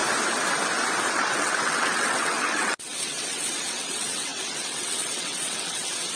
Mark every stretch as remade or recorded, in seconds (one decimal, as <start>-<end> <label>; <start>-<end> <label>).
0.0-1.1 recorded; 1.1-6.2 remade